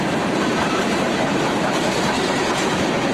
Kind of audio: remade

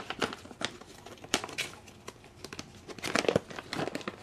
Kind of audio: recorded